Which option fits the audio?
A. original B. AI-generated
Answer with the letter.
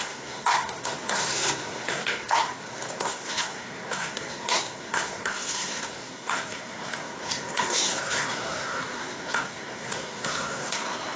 B